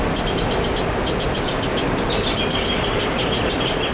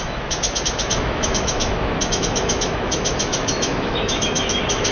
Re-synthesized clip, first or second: second